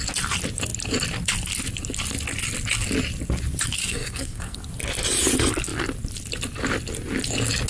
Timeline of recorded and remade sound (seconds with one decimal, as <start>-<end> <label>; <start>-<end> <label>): 0.0-3.8 recorded; 3.8-4.6 remade; 4.6-7.7 recorded